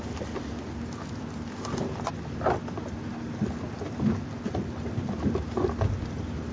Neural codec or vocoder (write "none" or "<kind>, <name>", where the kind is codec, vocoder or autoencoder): none